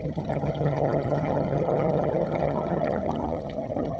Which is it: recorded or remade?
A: remade